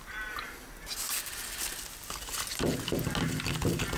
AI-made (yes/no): no